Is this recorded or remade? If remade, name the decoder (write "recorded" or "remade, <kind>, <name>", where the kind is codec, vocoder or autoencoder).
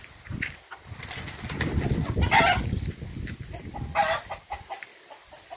recorded